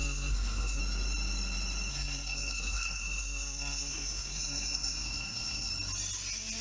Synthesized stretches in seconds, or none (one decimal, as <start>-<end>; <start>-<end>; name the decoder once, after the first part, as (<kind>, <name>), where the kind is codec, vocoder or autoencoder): 0.0-0.8 (codec, SNAC); 1.9-5.7